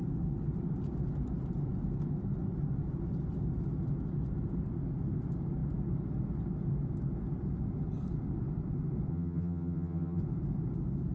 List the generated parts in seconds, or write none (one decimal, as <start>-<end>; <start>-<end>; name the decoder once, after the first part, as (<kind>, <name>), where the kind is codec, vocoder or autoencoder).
9.1-10.2 (vocoder, HiFi-GAN)